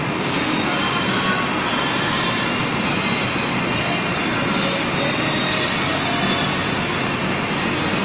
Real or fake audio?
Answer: real